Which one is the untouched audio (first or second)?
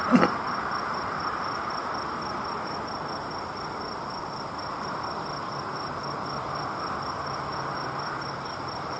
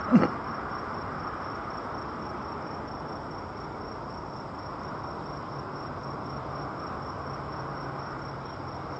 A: second